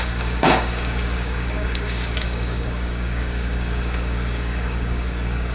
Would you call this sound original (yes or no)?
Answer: no